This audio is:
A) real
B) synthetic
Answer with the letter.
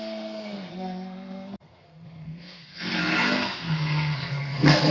B